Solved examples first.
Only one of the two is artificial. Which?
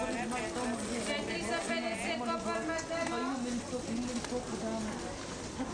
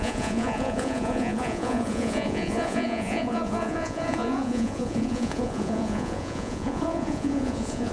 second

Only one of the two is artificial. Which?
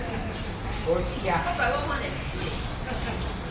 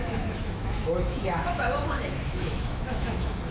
second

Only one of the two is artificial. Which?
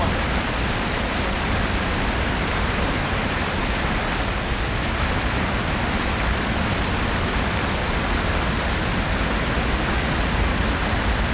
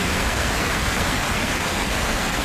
second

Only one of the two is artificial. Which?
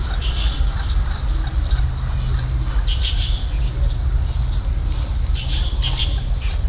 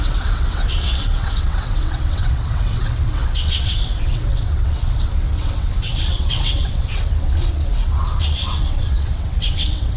second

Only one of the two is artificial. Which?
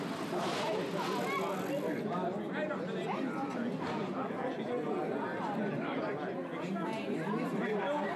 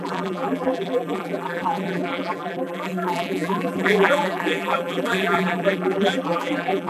second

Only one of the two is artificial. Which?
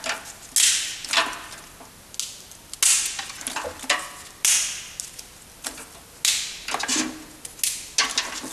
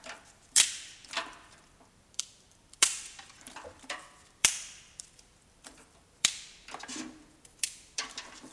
second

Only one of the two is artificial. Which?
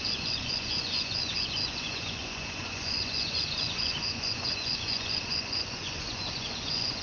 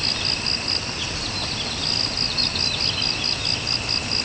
first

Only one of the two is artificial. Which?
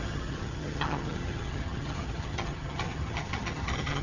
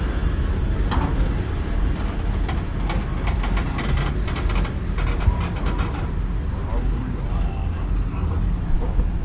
first